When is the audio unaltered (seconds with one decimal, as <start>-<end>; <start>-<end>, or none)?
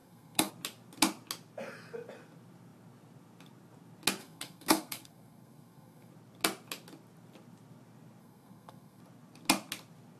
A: 0.5-4.2; 6.1-8.2; 9.0-10.2